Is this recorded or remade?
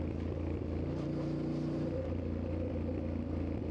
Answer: recorded